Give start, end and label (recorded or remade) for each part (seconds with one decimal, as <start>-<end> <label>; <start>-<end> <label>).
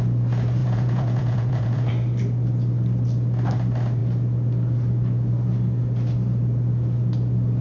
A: 0.0-0.6 recorded; 0.6-1.9 remade; 1.9-7.6 recorded